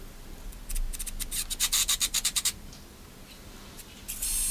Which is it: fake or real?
real